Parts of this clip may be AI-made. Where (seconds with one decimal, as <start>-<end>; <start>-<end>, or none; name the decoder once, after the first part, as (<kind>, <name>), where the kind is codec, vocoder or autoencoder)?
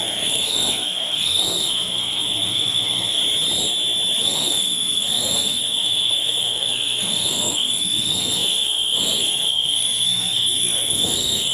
0.0-3.2 (codec, SNAC); 4.2-11.5